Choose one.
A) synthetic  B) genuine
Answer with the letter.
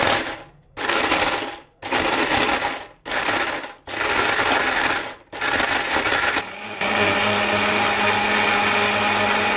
B